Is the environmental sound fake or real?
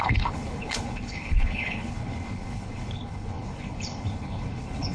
fake